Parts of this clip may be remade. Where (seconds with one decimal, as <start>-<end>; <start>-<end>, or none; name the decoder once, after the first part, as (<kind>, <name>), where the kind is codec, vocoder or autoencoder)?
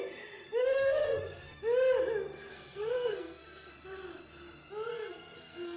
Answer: 0.6-1.6 (codec, SNAC); 2.5-3.7; 4.9-5.8